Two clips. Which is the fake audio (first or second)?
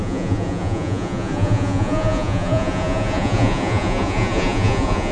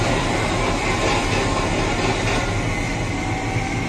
first